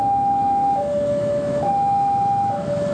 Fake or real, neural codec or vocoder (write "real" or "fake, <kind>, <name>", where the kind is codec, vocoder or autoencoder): fake, autoencoder, DAC-VAE